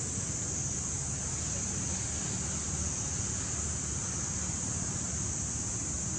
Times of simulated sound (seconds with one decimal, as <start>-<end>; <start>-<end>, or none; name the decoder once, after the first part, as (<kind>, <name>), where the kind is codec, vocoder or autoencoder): 4.0-6.2 (vocoder, BigVGAN v2)